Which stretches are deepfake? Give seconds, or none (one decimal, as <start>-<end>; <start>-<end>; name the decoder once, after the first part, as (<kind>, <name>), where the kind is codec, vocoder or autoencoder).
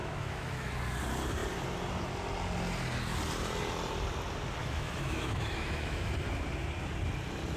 0.0-0.7 (autoencoder, DAC-VAE); 4.6-6.1